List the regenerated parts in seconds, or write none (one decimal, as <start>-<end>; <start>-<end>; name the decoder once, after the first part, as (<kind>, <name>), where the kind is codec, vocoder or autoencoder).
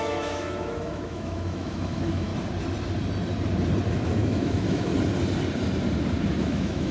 0.0-2.3 (autoencoder, DAC-VAE); 3.9-4.9; 6.4-6.9